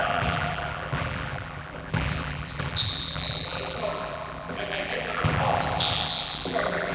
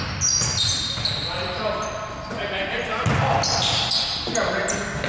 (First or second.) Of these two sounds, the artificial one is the first